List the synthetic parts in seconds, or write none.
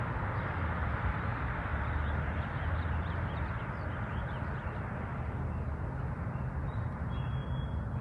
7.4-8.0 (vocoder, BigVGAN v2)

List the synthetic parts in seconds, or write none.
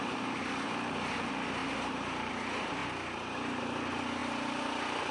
1.6-2.3 (vocoder, BigVGAN v2); 2.8-3.6; 4.2-5.1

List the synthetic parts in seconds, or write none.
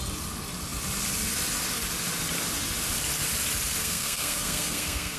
3.8-5.2 (codec, SNAC)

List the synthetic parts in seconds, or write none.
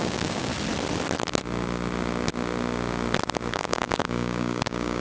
0.0-0.5 (codec, DAC); 3.5-5.0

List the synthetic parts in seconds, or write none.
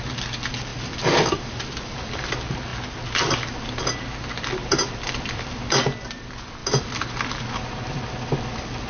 0.7-2.3 (vocoder, BigVGAN v2); 4.6-5.8; 6.6-7.4